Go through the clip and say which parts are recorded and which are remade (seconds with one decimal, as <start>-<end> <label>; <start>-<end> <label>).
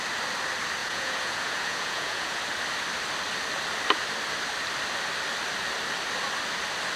0.0-0.8 recorded; 0.8-2.4 remade; 2.4-7.0 recorded